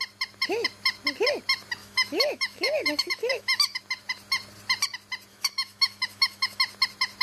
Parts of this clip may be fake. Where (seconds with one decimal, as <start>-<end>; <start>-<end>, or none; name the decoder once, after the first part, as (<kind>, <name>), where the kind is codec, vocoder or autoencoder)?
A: 1.8-3.8 (autoencoder, DAC-VAE); 5.3-6.6